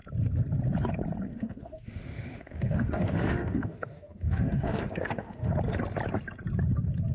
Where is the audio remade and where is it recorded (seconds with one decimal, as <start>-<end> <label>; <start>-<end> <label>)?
0.0-1.3 recorded; 1.3-5.5 remade; 5.5-7.1 recorded

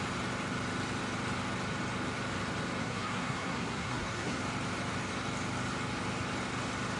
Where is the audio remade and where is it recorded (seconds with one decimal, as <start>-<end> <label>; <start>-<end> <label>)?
0.0-2.8 recorded; 2.8-4.4 remade; 4.4-7.0 recorded

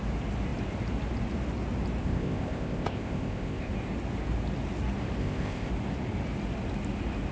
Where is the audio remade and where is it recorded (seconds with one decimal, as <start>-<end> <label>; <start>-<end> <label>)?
0.0-2.0 recorded; 2.0-3.7 remade; 3.7-5.2 recorded; 5.2-5.7 remade; 5.7-7.3 recorded

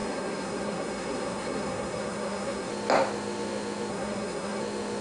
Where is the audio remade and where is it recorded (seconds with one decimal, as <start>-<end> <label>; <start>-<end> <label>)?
0.0-2.7 remade; 2.7-3.9 recorded; 3.9-4.6 remade; 4.6-5.0 recorded

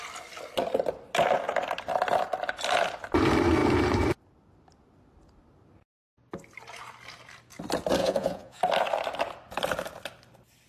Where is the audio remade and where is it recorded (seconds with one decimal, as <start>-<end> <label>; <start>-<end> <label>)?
0.0-8.0 recorded; 8.0-8.6 remade; 8.6-10.7 recorded

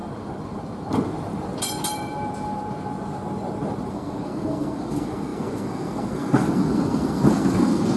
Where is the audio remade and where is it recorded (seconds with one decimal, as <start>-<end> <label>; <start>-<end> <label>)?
0.0-3.9 recorded; 3.9-8.0 remade

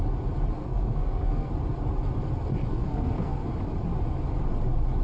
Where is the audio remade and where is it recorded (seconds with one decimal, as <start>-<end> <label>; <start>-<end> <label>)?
0.0-0.6 recorded; 0.6-1.5 remade; 1.5-2.7 recorded; 2.7-3.5 remade; 3.5-5.0 recorded